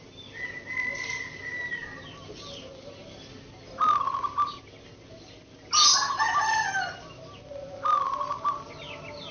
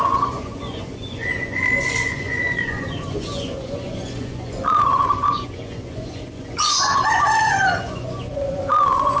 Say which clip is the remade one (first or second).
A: second